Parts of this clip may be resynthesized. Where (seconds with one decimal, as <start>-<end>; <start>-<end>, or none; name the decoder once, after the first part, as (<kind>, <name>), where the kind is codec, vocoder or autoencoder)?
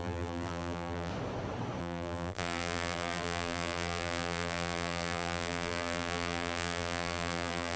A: 0.0-1.1 (vocoder, BigVGAN v2); 1.8-7.8